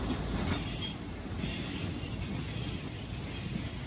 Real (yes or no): yes